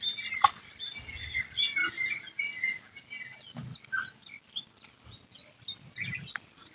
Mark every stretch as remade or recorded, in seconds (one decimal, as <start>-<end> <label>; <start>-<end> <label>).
0.0-6.7 recorded